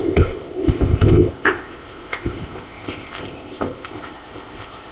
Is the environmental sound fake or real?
fake